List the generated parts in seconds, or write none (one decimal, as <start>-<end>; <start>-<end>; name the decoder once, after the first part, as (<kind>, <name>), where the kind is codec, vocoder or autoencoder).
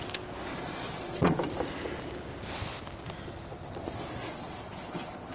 0.5-1.4 (vocoder, Vocos); 4.2-5.3